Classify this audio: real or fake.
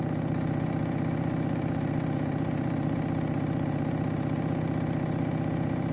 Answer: fake